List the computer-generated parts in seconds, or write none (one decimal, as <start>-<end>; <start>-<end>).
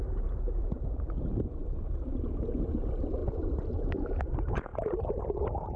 1.6-2.1; 4.7-5.2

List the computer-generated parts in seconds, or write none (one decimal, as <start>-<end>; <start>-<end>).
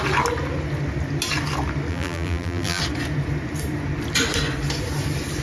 1.9-2.8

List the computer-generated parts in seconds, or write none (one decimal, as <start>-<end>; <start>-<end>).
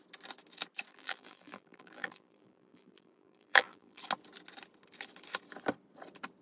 0.9-4.0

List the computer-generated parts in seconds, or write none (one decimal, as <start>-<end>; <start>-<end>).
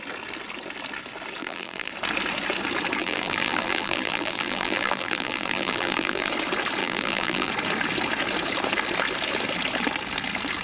1.4-1.9; 3.0-6.3; 6.8-7.5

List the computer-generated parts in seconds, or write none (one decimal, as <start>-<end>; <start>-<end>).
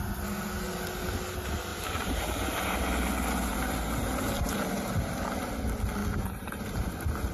1.7-2.8; 3.5-5.1; 6.0-7.3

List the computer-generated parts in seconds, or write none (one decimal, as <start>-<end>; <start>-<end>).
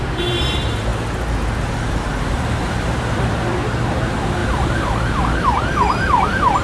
0.0-0.9; 1.9-6.6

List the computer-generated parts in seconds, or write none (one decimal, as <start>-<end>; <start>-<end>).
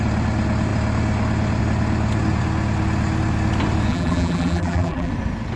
3.9-5.1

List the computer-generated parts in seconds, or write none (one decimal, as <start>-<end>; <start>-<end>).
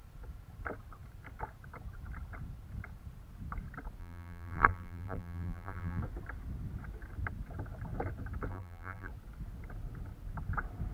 4.0-6.0; 8.5-9.1